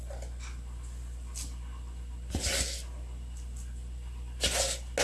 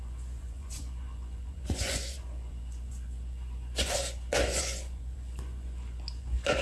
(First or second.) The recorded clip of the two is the first